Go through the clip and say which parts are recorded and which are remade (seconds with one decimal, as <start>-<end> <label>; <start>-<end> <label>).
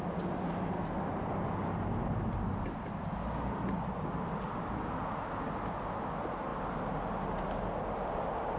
0.0-8.6 recorded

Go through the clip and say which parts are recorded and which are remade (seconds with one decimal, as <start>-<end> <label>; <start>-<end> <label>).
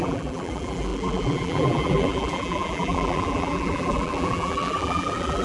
0.0-5.4 remade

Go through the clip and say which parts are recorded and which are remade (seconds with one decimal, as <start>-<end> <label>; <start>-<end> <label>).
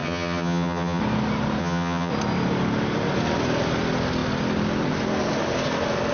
0.0-1.0 remade; 1.0-1.6 recorded; 1.6-2.1 remade; 2.1-6.1 recorded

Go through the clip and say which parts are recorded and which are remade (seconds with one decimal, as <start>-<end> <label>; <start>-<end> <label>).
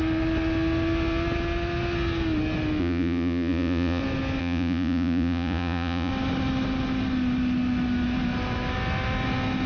0.0-2.8 recorded; 2.8-4.0 remade; 4.0-4.4 recorded; 4.4-6.1 remade; 6.1-9.7 recorded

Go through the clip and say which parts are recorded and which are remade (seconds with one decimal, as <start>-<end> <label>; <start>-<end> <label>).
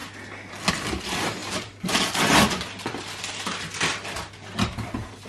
0.0-5.3 recorded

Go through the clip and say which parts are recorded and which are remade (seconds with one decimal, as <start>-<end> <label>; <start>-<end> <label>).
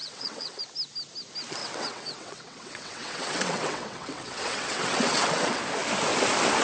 0.0-0.6 remade; 0.6-1.6 recorded; 1.6-5.6 remade; 5.6-6.6 recorded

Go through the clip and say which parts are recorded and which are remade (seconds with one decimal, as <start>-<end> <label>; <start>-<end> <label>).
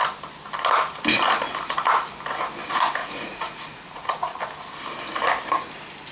0.0-3.0 recorded; 3.0-4.4 remade; 4.4-6.1 recorded